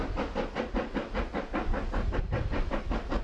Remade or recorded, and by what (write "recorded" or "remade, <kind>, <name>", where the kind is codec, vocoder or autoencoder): recorded